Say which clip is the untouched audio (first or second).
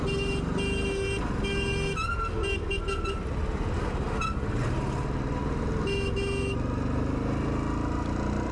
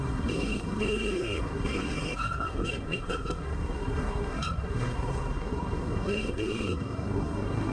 first